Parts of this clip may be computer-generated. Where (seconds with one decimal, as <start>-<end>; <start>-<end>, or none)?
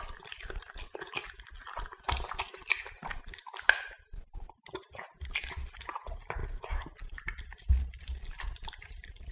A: none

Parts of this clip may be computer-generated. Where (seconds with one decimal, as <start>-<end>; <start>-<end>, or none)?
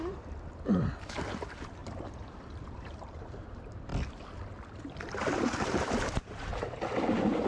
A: 0.0-3.9; 5.2-6.5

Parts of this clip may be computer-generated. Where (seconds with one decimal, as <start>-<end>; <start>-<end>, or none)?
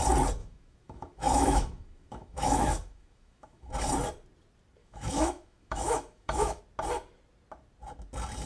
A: 0.4-3.7; 4.8-6.6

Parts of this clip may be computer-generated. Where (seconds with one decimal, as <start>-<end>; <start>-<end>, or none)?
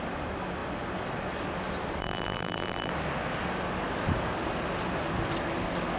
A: 2.0-2.9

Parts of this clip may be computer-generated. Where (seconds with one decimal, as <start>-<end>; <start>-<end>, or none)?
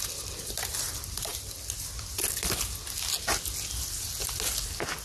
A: none